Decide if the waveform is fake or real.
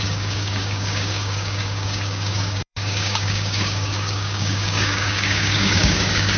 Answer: fake